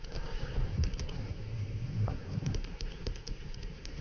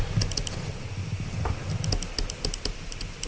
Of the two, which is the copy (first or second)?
first